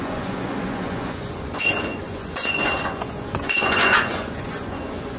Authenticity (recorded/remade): remade